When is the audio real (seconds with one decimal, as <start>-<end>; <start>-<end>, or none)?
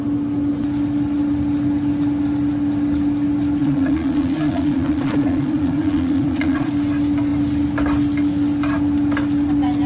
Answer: 0.0-3.6; 6.7-9.9